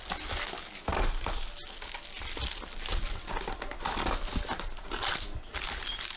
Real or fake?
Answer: real